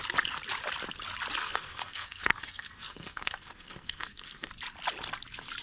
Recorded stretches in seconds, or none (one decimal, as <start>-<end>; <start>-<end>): 0.0-1.4; 4.5-5.6